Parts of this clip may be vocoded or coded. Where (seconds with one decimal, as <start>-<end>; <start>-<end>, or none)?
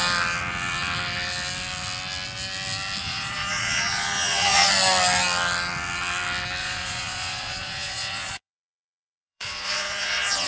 3.0-4.7; 6.6-10.5